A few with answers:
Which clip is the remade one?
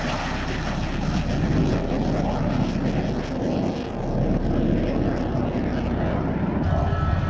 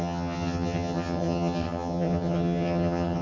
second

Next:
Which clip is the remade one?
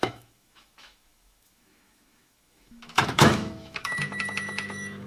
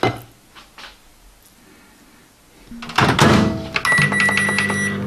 first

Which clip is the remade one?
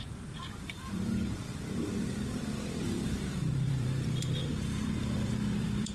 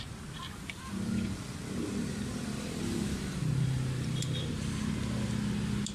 first